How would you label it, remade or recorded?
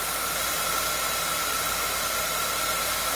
recorded